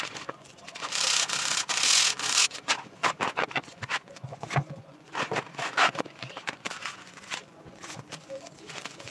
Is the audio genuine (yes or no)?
no